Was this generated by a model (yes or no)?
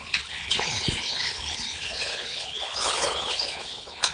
yes